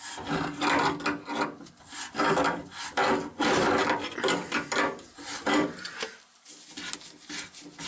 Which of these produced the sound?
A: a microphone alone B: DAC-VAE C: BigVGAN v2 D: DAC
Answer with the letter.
A